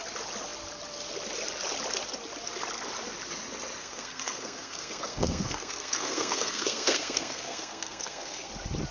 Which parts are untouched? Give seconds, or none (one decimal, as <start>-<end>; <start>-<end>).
0.0-3.8; 8.5-8.9